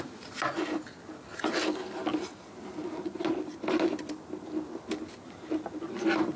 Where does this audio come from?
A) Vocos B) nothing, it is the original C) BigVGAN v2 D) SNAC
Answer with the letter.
B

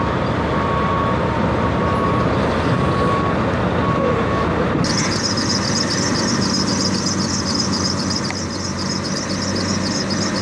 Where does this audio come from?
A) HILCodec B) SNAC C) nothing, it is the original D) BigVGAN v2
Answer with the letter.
C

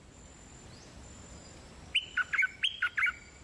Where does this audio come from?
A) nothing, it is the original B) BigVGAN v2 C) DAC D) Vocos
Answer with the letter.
A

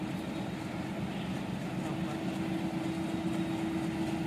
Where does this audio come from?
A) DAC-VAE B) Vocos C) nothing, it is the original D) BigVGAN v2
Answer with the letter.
C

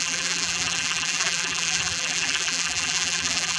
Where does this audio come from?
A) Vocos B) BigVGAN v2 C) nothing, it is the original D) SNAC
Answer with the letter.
B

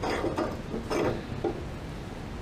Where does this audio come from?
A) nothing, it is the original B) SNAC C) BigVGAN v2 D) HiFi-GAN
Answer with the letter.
A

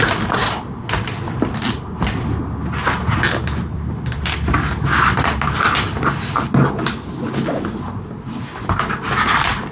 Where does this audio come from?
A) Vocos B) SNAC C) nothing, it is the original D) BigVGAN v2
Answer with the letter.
C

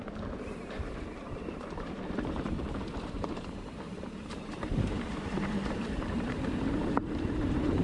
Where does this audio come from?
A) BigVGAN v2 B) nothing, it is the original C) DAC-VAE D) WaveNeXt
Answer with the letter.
A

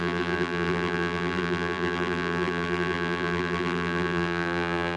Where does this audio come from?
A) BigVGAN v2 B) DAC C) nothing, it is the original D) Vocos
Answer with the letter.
A